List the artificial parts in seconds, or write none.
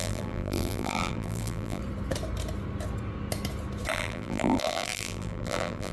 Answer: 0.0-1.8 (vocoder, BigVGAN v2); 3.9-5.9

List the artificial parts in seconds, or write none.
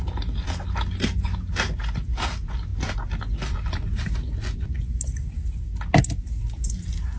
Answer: none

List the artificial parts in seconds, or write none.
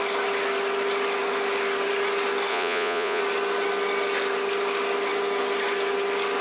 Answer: 2.5-3.2 (vocoder, Vocos)